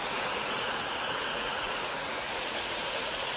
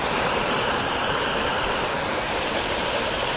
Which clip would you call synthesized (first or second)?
first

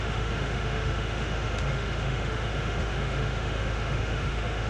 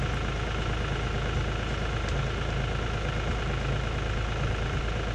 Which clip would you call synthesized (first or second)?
first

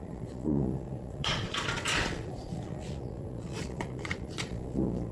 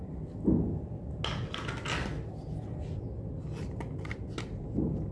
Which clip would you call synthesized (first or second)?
first